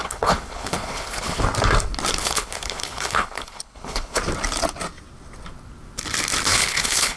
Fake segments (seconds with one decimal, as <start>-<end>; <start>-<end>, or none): 0.0-1.4; 2.2-4.2; 6.5-7.2